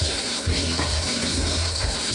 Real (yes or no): no